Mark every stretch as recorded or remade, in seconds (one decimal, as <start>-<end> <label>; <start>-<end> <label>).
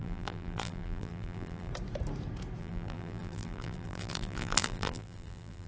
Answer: 0.0-1.7 remade; 1.7-2.6 recorded; 2.6-5.7 remade